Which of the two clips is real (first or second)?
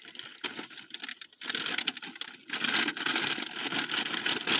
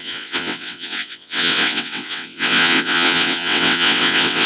first